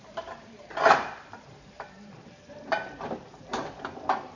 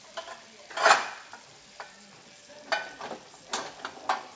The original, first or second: second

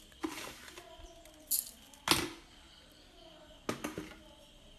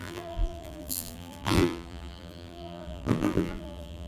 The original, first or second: first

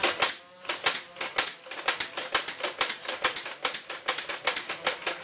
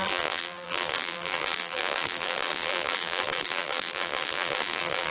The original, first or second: first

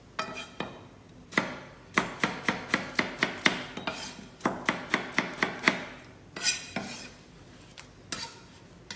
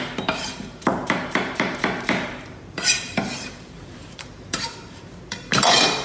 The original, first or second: first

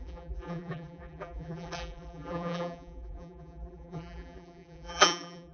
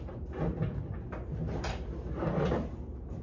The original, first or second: second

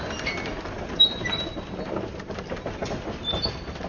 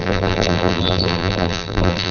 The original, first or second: first